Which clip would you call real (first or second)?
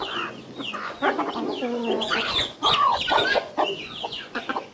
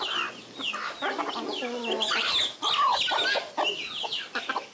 second